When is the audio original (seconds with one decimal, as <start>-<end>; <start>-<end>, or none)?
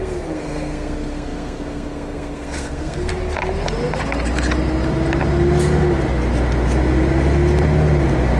3.1-8.4